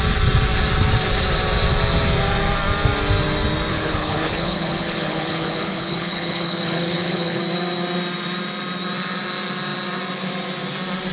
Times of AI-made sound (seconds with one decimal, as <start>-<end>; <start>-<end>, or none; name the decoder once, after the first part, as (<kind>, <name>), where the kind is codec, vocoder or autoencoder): 3.7-7.4 (codec, HILCodec)